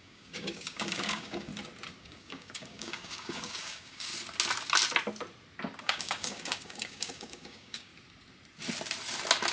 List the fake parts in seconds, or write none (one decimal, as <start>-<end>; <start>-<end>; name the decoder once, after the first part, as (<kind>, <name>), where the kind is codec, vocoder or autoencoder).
0.0-1.5 (codec, DAC); 2.0-4.1; 5.8-7.9